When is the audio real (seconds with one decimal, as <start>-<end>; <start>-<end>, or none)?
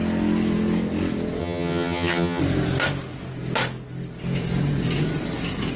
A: 0.0-1.4; 2.4-5.8